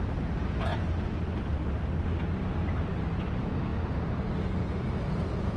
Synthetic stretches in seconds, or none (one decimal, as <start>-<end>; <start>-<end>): none